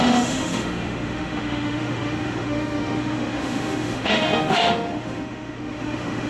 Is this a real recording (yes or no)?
no